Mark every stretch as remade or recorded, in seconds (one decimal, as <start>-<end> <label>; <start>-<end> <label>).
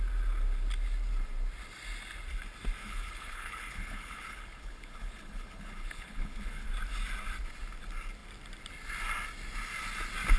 0.0-2.8 recorded; 2.8-6.7 remade; 6.7-10.4 recorded